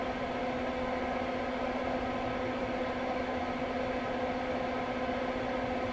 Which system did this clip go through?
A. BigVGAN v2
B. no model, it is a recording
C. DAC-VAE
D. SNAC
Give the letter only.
B